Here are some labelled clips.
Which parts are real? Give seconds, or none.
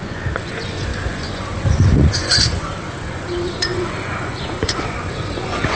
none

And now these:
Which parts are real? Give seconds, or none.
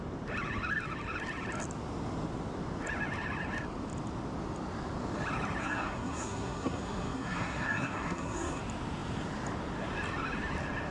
0.0-5.6; 8.6-10.9